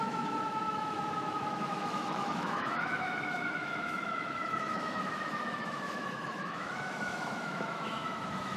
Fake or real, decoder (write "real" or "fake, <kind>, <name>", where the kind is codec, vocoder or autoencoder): fake, autoencoder, DAC-VAE